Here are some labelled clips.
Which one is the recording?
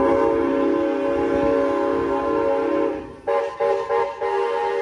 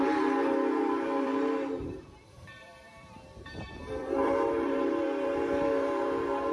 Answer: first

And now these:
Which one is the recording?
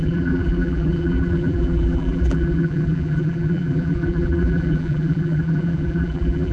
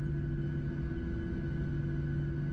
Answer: second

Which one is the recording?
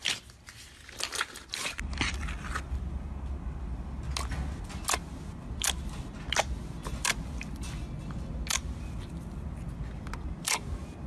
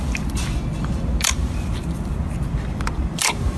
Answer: first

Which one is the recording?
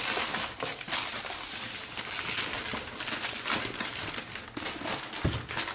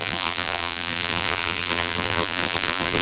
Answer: first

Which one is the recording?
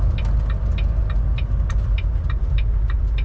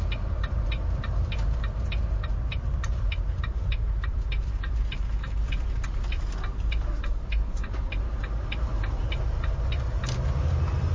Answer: first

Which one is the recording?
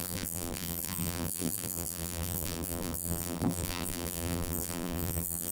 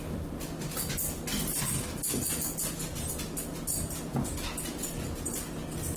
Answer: second